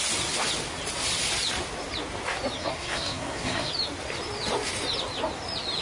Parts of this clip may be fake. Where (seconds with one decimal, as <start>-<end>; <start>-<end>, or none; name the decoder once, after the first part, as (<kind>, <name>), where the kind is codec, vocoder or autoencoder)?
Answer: 2.6-3.7 (codec, SNAC)